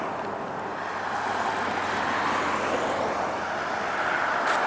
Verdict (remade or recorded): recorded